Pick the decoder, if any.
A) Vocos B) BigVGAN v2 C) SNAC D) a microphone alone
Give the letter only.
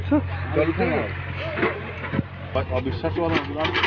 D